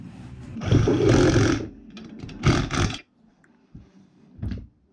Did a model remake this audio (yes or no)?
yes